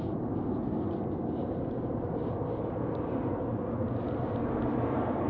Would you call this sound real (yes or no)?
yes